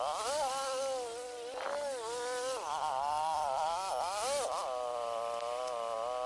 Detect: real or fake real